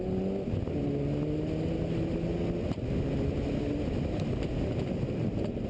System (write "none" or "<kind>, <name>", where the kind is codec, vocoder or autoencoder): none